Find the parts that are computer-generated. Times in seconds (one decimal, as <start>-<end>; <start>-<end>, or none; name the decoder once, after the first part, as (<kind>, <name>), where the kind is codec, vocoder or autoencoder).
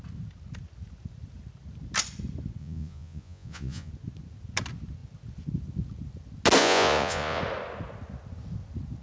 2.6-3.9 (vocoder, Vocos); 6.6-7.4